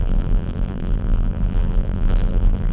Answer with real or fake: fake